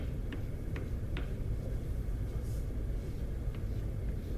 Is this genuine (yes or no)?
yes